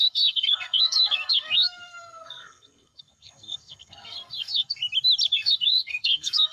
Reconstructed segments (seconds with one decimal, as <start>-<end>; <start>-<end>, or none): 0.0-4.8; 5.3-6.5